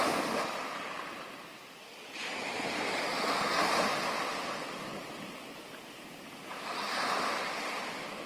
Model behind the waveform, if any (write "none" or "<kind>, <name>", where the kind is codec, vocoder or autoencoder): none